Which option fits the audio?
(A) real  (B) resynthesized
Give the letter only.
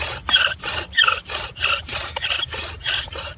A